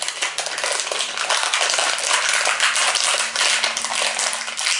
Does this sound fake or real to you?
real